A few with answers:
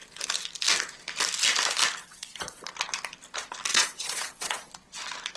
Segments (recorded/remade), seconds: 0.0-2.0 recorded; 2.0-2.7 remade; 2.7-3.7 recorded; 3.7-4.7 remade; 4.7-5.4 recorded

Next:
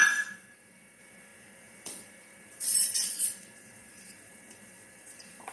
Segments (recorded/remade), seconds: 0.0-5.5 remade

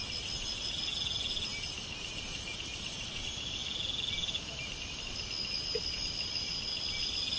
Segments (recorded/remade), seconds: 0.0-7.4 recorded

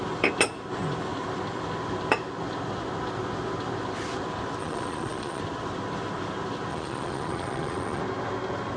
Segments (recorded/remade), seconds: 0.0-4.6 recorded; 4.6-5.4 remade; 5.4-6.7 recorded; 6.7-8.0 remade; 8.0-8.8 recorded

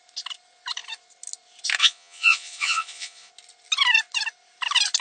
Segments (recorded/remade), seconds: 0.0-1.8 recorded; 1.8-3.3 remade; 3.3-5.0 recorded

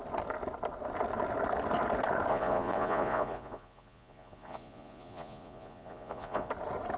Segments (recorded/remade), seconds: 0.0-2.3 recorded; 2.3-6.5 remade; 6.5-7.0 recorded

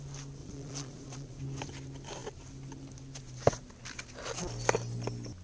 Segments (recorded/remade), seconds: 0.0-0.4 recorded; 0.4-1.4 remade; 1.4-5.4 recorded

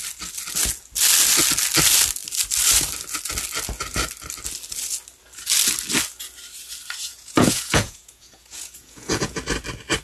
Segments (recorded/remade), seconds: 0.0-7.0 recorded; 7.0-9.4 remade; 9.4-10.0 recorded